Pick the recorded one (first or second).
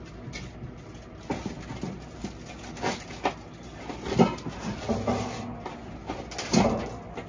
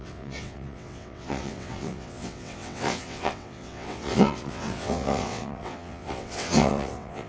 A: first